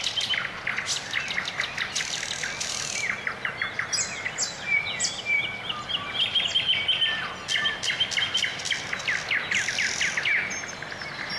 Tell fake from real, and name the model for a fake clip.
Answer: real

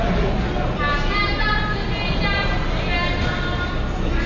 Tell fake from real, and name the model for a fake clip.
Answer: real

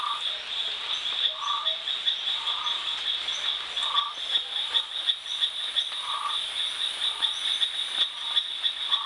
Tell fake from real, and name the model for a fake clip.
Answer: real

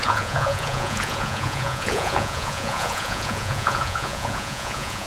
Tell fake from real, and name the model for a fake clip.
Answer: fake, vocoder, Vocos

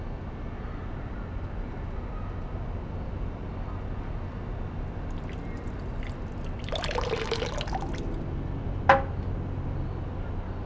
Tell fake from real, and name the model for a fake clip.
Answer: real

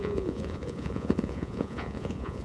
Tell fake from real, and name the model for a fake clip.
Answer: fake, vocoder, Vocos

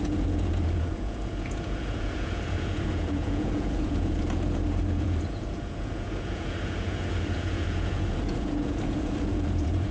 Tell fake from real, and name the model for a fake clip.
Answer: fake, vocoder, Vocos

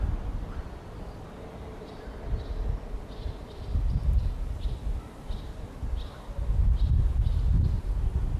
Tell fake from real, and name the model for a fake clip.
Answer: real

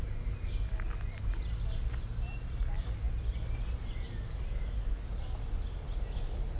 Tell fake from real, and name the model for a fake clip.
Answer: real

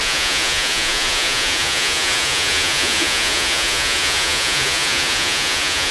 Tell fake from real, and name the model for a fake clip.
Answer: fake, vocoder, Vocos